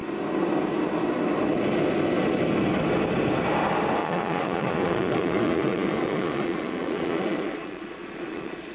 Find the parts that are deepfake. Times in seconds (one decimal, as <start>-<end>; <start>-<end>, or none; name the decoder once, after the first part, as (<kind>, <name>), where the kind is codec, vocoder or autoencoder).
4.0-8.7 (vocoder, Vocos)

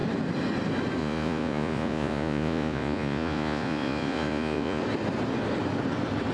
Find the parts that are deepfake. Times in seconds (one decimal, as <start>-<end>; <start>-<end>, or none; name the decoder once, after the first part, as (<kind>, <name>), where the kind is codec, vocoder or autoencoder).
1.0-4.8 (vocoder, Vocos)

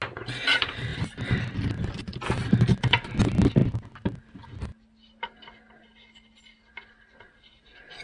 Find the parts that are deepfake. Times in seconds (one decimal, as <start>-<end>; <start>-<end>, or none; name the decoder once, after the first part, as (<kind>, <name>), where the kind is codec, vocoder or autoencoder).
none